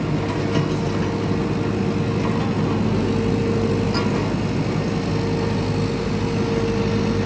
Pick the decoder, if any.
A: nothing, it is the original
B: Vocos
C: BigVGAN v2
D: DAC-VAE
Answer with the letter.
A